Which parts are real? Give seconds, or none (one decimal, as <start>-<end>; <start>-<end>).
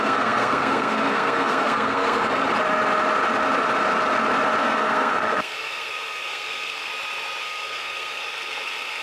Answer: 2.3-4.6; 6.9-7.4